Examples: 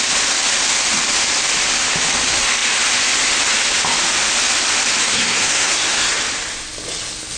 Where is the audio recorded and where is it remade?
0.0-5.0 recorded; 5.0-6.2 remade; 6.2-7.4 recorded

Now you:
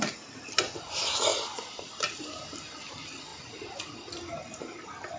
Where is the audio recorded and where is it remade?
0.0-5.2 recorded

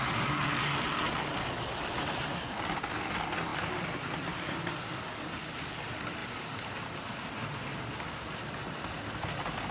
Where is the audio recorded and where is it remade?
0.0-3.5 recorded; 3.5-5.0 remade; 5.0-6.2 recorded; 6.2-7.3 remade; 7.3-9.7 recorded

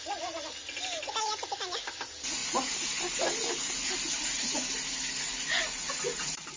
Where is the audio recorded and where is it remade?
0.0-6.6 recorded

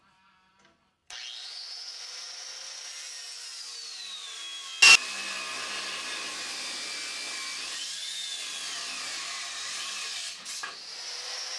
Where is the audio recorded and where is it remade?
0.0-1.4 recorded; 1.4-2.0 remade; 2.0-11.6 recorded

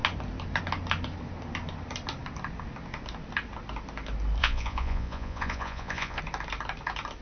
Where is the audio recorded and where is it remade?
0.0-4.4 recorded; 4.4-6.2 remade; 6.2-7.2 recorded

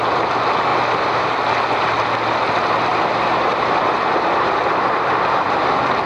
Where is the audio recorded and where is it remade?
0.0-0.7 recorded; 0.7-1.3 remade; 1.3-2.9 recorded; 2.9-5.6 remade; 5.6-6.1 recorded

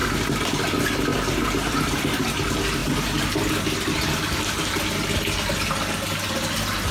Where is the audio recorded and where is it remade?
0.0-1.1 recorded; 1.1-2.0 remade; 2.0-6.9 recorded